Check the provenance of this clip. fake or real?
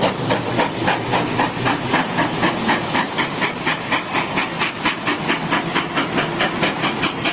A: real